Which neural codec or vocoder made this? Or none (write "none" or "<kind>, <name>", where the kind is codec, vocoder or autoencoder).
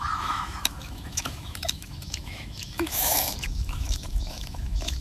autoencoder, DAC-VAE